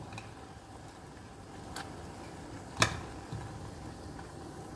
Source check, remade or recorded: recorded